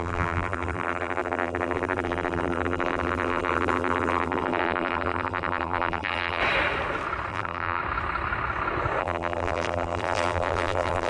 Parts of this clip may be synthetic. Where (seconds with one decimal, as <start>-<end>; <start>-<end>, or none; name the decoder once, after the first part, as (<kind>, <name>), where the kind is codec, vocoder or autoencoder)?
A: 0.0-6.4 (vocoder, BigVGAN v2); 7.3-7.8; 9.0-11.1